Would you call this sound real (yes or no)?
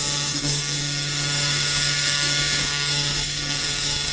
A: no